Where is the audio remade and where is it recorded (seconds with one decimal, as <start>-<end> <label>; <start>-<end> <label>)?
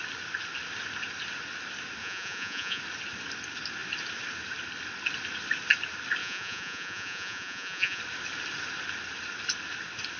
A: 0.0-2.0 recorded; 2.0-2.8 remade; 2.8-6.2 recorded; 6.2-8.0 remade; 8.0-10.2 recorded